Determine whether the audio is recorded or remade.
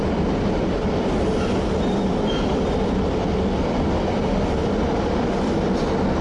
recorded